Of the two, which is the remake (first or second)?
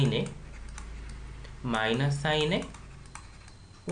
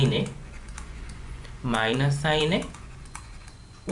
second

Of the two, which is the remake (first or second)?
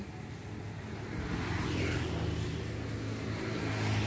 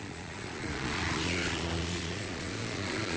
second